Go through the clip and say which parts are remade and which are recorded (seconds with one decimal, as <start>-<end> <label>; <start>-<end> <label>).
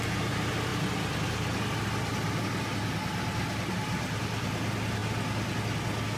0.0-6.2 recorded